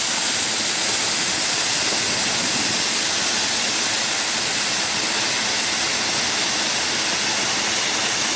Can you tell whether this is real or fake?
real